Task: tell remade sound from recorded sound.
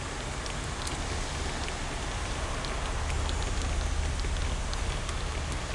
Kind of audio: recorded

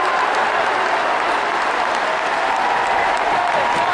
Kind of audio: recorded